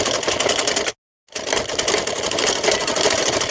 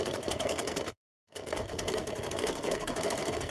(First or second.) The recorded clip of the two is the first